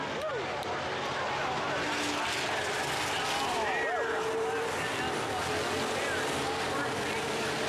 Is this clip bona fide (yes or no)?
yes